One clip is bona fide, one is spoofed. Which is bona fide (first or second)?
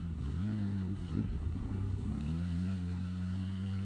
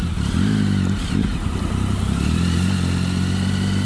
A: second